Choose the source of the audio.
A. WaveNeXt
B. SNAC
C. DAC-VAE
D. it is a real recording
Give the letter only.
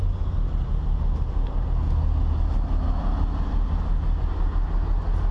D